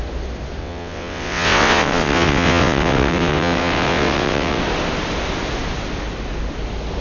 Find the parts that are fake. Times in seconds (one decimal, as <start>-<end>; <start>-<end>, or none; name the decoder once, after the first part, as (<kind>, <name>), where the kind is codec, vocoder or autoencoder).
0.6-4.6 (vocoder, WaveNeXt)